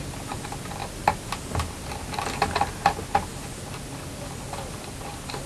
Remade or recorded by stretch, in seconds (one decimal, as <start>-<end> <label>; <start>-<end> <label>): 0.0-5.5 recorded